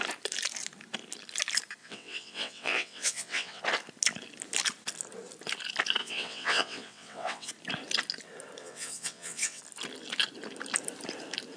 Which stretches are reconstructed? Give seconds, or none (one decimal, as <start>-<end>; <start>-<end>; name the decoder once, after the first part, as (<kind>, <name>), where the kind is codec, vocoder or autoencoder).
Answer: 1.8-3.6 (vocoder, WaveNeXt); 6.0-7.5; 8.6-9.6